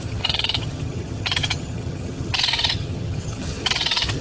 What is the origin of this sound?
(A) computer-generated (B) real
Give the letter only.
A